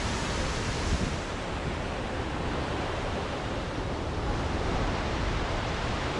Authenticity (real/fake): fake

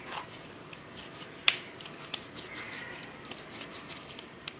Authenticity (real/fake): fake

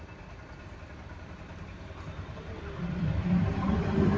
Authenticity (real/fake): fake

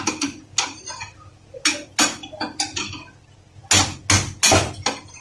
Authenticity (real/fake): real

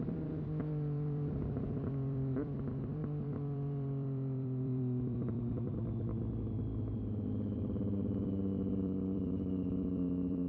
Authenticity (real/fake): fake